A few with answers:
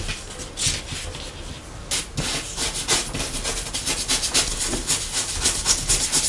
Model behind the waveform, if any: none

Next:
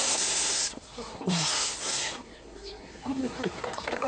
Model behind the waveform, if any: codec, SNAC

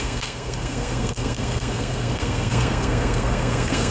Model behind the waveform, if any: codec, SNAC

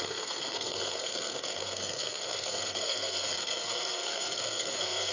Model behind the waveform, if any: codec, SNAC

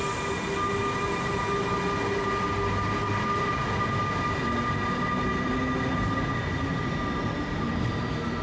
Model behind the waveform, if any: none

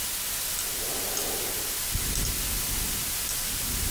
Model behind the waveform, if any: none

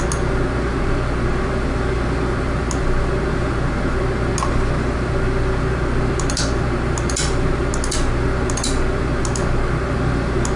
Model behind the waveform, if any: none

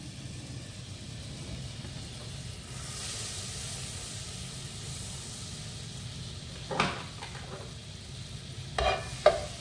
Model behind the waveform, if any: none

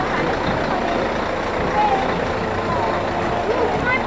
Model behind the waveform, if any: none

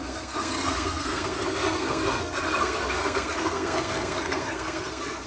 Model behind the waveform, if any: codec, SNAC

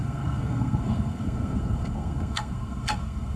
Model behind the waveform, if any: codec, SNAC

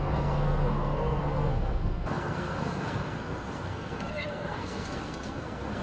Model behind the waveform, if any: codec, SNAC